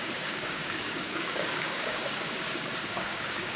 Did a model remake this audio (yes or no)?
yes